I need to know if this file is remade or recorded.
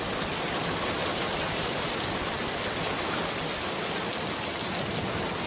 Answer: recorded